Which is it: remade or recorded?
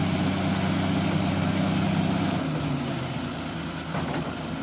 recorded